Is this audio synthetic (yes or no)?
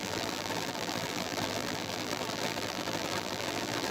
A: yes